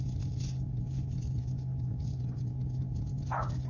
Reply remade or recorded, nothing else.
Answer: recorded